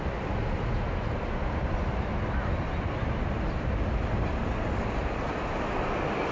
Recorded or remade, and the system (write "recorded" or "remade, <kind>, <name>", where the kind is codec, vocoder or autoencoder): recorded